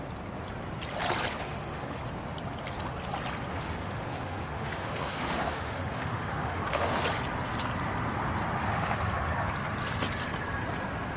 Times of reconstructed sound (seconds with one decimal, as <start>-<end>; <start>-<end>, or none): 1.3-2.0; 3.5-7.0

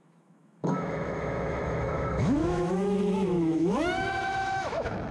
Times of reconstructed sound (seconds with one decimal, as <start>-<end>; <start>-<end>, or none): 0.0-5.1